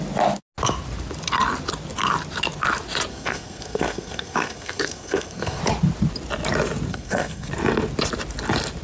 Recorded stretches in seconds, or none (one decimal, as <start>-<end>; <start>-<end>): 0.0-3.1; 5.6-6.9; 7.5-8.8